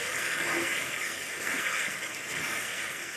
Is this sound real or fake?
fake